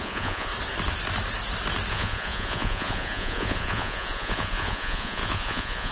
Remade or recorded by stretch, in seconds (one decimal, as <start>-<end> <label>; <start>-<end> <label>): 0.0-0.5 remade; 0.5-1.9 recorded; 1.9-5.9 remade